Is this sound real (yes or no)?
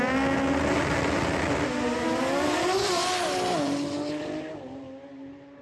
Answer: yes